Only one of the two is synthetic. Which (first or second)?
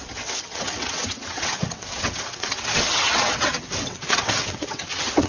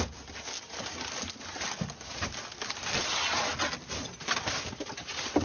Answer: first